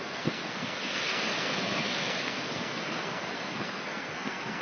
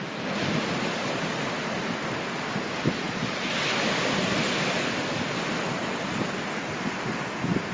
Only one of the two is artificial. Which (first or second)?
first